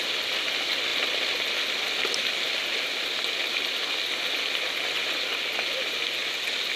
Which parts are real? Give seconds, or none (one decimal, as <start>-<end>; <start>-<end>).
0.0-6.8